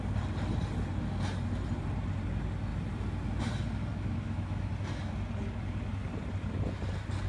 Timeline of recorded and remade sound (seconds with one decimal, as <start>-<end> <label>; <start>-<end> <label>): 0.0-3.9 recorded; 3.9-4.7 remade; 4.7-7.3 recorded